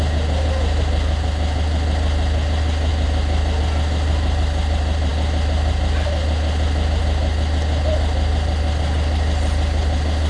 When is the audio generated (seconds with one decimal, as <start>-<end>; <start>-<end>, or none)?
none